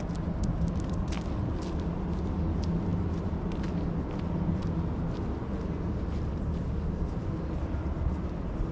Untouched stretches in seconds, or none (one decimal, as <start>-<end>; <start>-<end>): 0.0-8.7